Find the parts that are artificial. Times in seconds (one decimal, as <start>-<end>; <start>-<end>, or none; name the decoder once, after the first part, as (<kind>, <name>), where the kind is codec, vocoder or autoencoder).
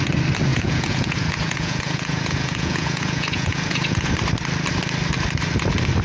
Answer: 0.5-4.1 (vocoder, Vocos)